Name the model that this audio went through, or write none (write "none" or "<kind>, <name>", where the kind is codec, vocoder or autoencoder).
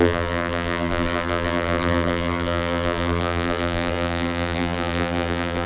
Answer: vocoder, BigVGAN v2